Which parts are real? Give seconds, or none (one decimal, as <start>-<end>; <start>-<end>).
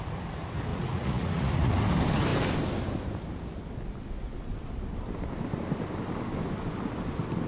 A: 0.0-0.7; 1.8-7.5